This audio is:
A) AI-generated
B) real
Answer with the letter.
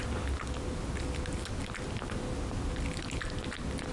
B